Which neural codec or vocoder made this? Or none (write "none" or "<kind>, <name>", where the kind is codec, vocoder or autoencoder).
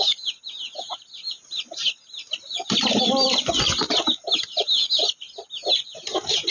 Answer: none